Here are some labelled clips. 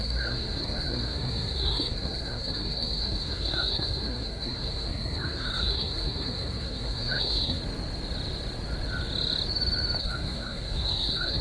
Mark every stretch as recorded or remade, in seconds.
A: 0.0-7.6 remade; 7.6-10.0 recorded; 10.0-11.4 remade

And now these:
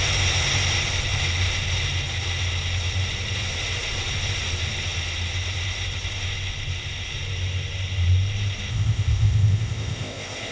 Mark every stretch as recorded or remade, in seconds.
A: 0.0-8.7 recorded; 8.7-10.5 remade

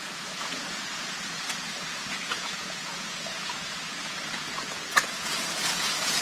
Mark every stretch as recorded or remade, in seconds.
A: 0.0-6.2 remade

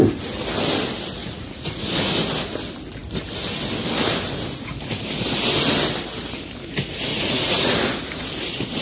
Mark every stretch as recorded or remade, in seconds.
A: 0.0-1.2 recorded; 1.2-2.1 remade; 2.1-7.1 recorded; 7.1-8.0 remade; 8.0-8.8 recorded

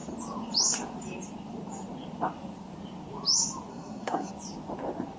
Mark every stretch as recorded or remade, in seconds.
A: 0.0-3.7 recorded; 3.7-4.3 remade; 4.3-5.2 recorded

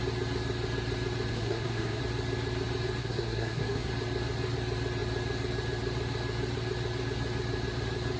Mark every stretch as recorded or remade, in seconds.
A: 0.0-1.3 recorded; 1.3-2.0 remade; 2.0-3.0 recorded; 3.0-3.9 remade; 3.9-8.2 recorded

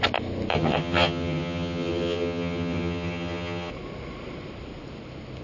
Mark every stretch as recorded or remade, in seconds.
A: 0.0-0.5 recorded; 0.5-3.7 remade; 3.7-5.4 recorded

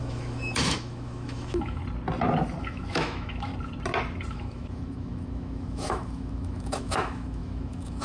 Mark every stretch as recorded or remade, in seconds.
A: 0.0-1.8 remade; 1.8-2.6 recorded; 2.6-3.5 remade; 3.5-4.3 recorded; 4.3-8.0 remade